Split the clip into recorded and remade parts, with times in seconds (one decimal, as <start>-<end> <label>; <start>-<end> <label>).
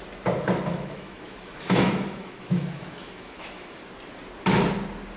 0.0-0.7 recorded; 0.7-3.8 remade; 3.8-5.2 recorded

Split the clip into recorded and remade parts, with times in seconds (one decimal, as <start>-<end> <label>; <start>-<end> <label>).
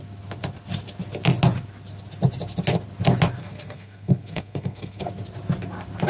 0.0-3.4 recorded; 3.4-5.1 remade; 5.1-6.1 recorded